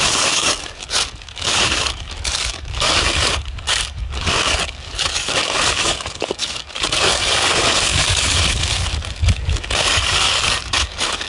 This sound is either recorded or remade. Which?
remade